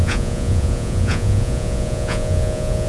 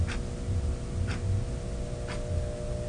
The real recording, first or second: second